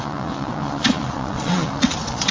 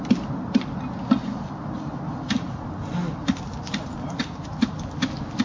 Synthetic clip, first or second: first